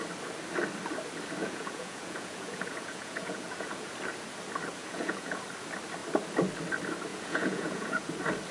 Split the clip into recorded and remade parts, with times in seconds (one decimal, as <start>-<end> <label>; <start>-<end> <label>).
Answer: 0.0-1.4 recorded; 1.4-3.9 remade; 3.9-4.8 recorded; 4.8-5.4 remade; 5.4-7.1 recorded; 7.1-8.1 remade; 8.1-8.5 recorded